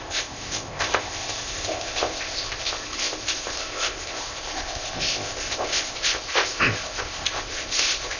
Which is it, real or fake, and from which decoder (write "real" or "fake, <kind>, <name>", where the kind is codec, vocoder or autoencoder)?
fake, codec, ZipCodec